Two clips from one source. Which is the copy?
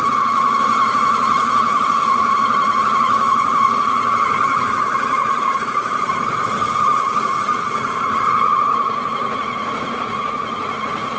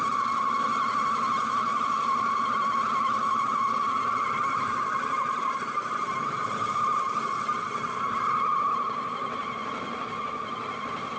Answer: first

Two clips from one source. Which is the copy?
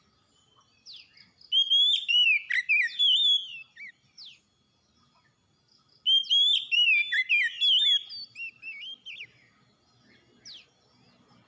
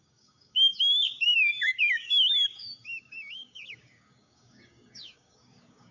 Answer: second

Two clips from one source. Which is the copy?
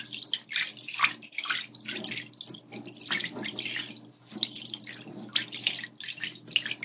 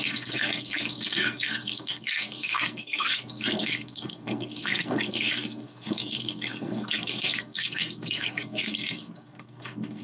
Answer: second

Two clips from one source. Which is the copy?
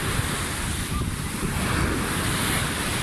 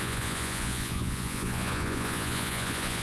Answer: second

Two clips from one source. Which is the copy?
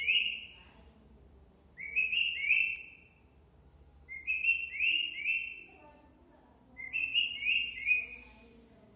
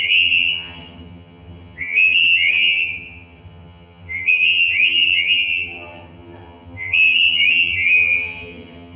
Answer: second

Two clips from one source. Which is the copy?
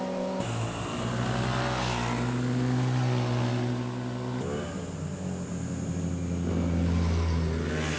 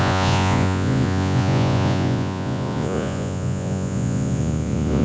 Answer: second